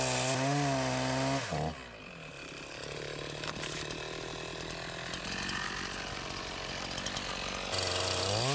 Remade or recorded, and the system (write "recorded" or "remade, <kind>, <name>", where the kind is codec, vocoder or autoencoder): recorded